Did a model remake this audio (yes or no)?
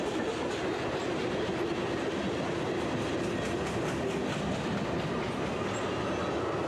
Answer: no